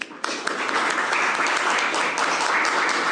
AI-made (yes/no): no